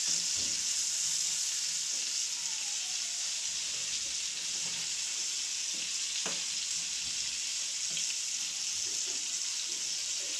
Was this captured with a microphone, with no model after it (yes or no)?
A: yes